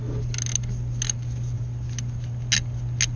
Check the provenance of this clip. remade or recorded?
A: recorded